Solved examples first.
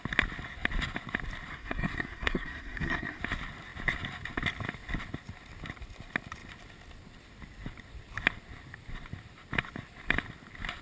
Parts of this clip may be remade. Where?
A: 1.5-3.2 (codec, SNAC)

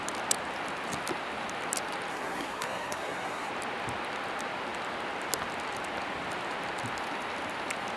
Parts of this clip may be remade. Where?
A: 2.1-3.5 (codec, SNAC)

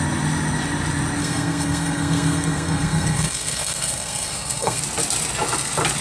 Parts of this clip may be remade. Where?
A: 1.2-4.8 (codec, SNAC)

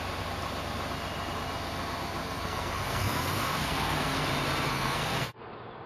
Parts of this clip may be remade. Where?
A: 2.2-4.3 (codec, SNAC); 4.7-5.4

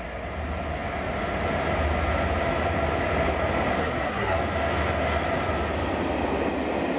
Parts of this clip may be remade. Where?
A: 3.8-4.4 (codec, SNAC)

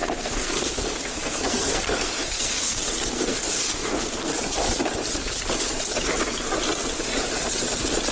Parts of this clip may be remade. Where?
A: 0.0-4.3 (codec, SNAC)